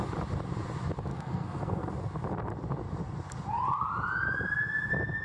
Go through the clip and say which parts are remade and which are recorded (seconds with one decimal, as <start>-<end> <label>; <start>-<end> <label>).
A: 0.0-1.1 recorded; 1.1-1.9 remade; 1.9-5.2 recorded